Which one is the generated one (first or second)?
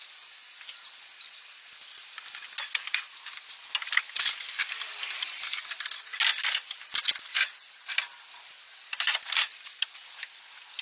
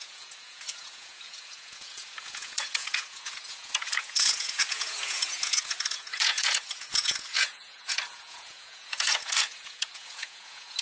second